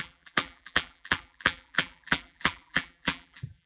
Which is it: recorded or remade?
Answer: remade